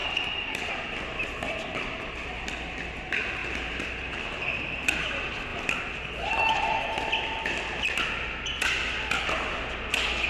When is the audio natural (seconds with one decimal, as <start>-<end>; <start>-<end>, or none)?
0.7-3.4; 4.4-10.3